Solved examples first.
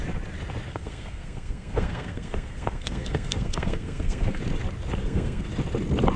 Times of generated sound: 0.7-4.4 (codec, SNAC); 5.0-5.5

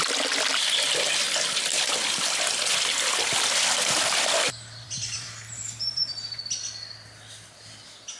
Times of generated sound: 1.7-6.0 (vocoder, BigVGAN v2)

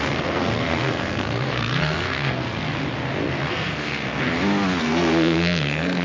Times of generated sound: 0.0-2.6 (codec, SNAC); 3.5-4.3; 4.8-6.0

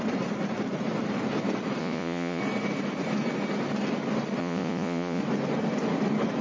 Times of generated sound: 1.8-2.4 (vocoder, Vocos); 4.4-5.2